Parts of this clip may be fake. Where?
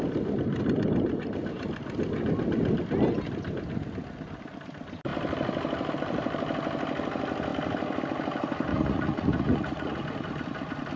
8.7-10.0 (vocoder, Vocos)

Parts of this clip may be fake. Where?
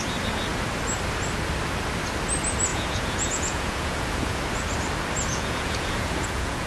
2.7-4.4 (vocoder, Vocos); 5.3-6.7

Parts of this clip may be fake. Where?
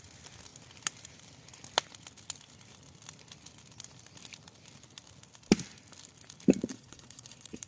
6.7-7.7 (vocoder, Vocos)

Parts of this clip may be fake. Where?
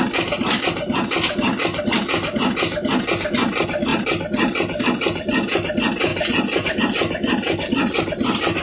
none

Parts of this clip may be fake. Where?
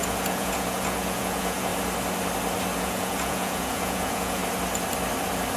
0.0-1.7 (vocoder, Vocos); 2.8-4.4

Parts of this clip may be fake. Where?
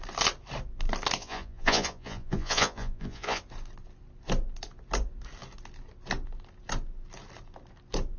1.2-3.4 (vocoder, Vocos)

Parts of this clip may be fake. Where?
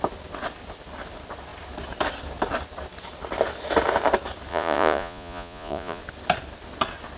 4.5-6.0 (vocoder, Vocos)